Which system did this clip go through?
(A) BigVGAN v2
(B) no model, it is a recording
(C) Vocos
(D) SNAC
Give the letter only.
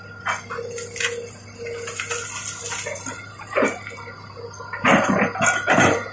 B